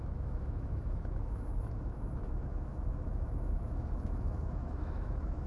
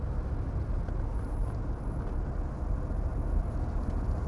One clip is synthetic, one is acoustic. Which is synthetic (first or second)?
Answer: first